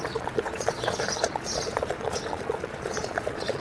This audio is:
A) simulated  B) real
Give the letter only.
A